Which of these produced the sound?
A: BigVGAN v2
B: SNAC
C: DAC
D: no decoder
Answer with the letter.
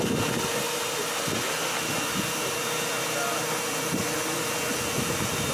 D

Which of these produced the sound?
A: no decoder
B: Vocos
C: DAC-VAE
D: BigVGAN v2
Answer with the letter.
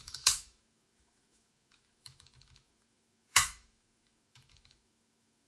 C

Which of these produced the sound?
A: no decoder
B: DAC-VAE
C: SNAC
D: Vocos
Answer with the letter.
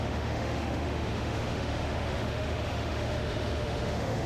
B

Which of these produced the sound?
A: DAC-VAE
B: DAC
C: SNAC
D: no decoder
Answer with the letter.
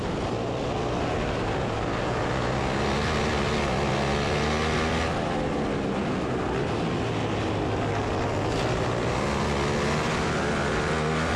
D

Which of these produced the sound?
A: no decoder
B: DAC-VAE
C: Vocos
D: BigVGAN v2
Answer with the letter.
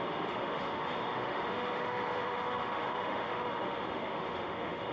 B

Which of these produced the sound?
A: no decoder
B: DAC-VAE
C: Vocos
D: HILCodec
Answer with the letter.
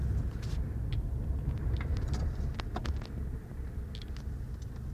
A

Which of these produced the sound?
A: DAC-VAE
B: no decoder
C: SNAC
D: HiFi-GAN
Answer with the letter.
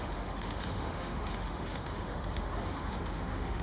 A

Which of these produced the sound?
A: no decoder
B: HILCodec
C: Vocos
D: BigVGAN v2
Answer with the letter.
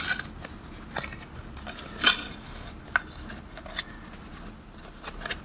A